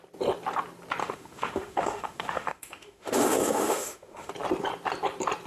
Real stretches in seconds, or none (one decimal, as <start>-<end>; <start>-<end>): 0.0-1.0; 4.3-5.5